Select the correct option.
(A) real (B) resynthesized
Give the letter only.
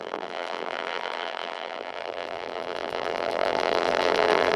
B